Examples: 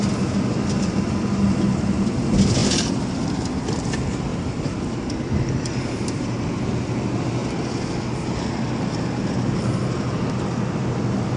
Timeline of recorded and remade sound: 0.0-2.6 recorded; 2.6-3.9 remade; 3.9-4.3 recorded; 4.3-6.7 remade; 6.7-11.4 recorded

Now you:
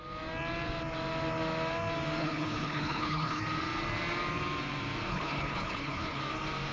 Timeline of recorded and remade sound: 0.0-2.2 recorded; 2.2-3.4 remade; 3.4-5.1 recorded; 5.1-6.2 remade; 6.2-6.7 recorded

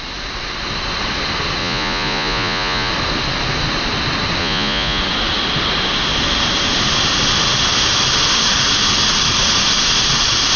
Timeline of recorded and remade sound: 0.0-1.6 recorded; 1.6-2.9 remade; 2.9-4.4 recorded; 4.4-5.0 remade; 5.0-10.6 recorded

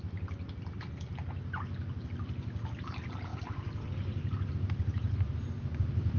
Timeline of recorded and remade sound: 0.0-1.1 remade; 1.1-2.0 recorded; 2.0-6.2 remade

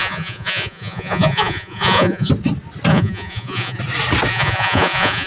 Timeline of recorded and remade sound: 0.0-2.3 remade; 2.3-2.9 recorded; 2.9-3.8 remade; 3.8-4.3 recorded; 4.3-5.3 remade